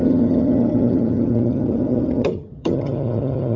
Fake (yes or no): yes